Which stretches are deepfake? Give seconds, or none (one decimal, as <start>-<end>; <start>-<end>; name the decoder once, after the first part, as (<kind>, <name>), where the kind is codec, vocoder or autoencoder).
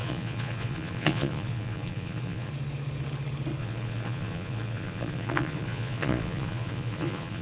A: 0.0-2.5 (vocoder, Vocos); 3.6-7.4